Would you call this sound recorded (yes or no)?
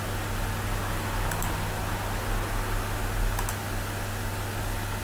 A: yes